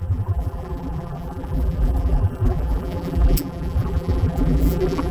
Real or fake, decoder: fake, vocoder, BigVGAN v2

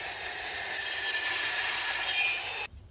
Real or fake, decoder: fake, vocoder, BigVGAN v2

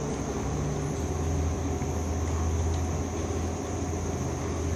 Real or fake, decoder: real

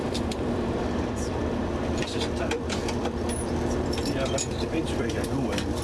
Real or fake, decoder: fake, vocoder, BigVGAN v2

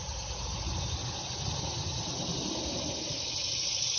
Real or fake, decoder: real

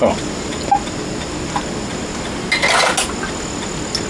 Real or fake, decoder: real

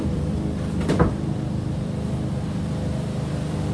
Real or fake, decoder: fake, vocoder, BigVGAN v2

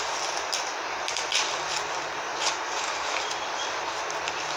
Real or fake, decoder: real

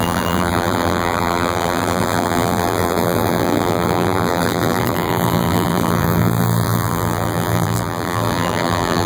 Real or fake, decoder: fake, vocoder, BigVGAN v2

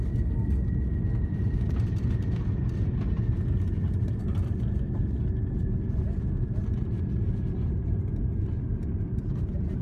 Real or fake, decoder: real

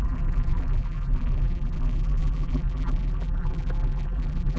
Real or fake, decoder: fake, vocoder, BigVGAN v2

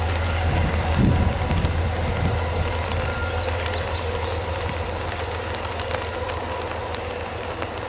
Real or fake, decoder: real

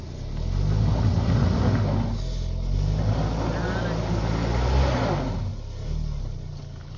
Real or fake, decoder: real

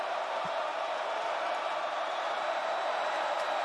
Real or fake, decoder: fake, vocoder, BigVGAN v2